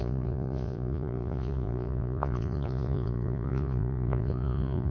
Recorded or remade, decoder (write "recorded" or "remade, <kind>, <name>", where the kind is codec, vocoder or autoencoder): remade, vocoder, Vocos